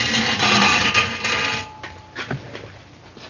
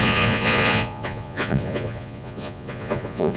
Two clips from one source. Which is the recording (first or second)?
first